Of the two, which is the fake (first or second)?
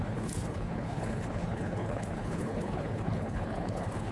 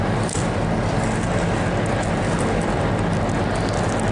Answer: first